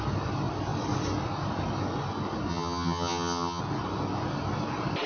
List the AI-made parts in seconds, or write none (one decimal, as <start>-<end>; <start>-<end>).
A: 2.5-3.6